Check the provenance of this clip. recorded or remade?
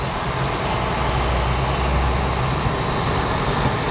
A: recorded